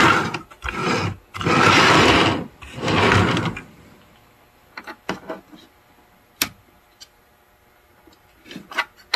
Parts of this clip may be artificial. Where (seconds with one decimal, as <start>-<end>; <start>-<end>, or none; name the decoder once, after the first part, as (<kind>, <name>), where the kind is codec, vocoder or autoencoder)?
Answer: 0.0-0.8 (vocoder, BigVGAN v2); 4.2-9.2